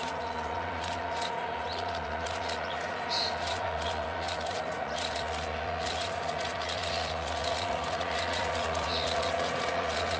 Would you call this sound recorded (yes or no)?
no